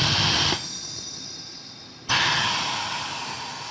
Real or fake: real